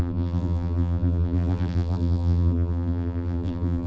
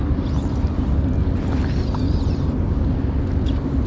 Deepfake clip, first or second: first